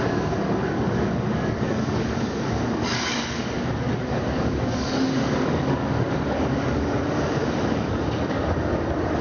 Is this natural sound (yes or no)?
no